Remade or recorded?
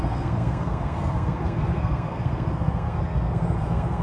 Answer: remade